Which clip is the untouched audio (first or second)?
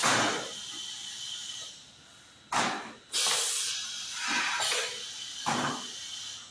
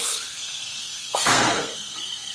first